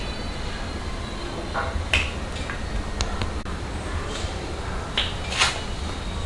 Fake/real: real